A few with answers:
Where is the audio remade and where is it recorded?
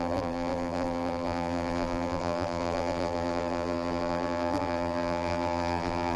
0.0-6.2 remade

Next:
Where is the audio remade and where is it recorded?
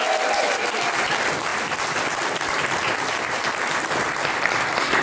0.0-1.5 recorded; 1.5-4.1 remade; 4.1-5.0 recorded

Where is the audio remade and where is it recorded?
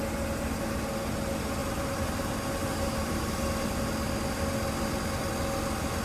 0.0-1.6 recorded; 1.6-2.2 remade; 2.2-2.6 recorded; 2.6-3.8 remade; 3.8-6.0 recorded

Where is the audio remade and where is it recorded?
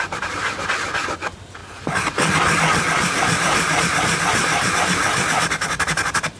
0.0-6.4 recorded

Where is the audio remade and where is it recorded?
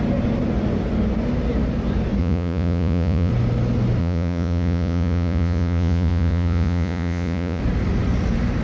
0.0-2.2 recorded; 2.2-3.3 remade; 3.3-4.0 recorded; 4.0-7.6 remade; 7.6-8.6 recorded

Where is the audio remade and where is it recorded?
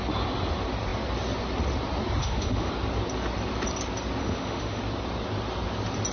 0.0-2.2 recorded; 2.2-2.7 remade; 2.7-4.2 recorded; 4.2-4.8 remade; 4.8-6.1 recorded